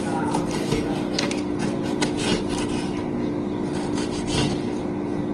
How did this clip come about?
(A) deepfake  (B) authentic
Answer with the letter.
B